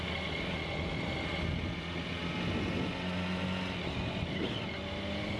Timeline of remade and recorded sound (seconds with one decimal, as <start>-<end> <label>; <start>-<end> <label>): 0.0-5.4 recorded